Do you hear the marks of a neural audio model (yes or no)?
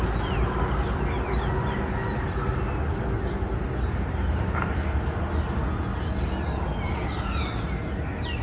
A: no